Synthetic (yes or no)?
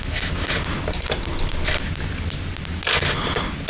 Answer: no